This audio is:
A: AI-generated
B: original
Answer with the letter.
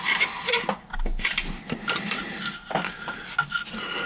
B